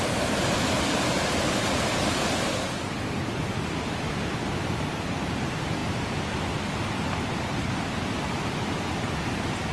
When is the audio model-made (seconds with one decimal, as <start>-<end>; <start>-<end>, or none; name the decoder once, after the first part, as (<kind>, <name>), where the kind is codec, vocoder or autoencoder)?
none